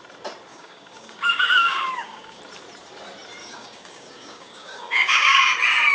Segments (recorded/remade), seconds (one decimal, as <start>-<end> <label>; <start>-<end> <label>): 0.0-0.5 recorded; 0.5-2.4 remade; 2.4-3.4 recorded; 3.4-5.5 remade; 5.5-5.9 recorded